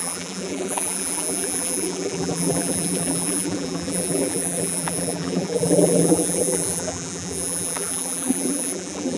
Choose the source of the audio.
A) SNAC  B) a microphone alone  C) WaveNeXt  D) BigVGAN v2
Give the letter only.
D